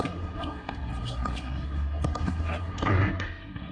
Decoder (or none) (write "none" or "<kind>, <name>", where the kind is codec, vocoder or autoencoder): codec, SNAC